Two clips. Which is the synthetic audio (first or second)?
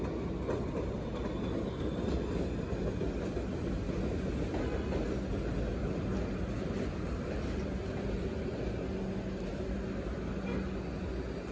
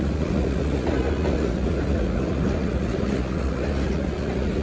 second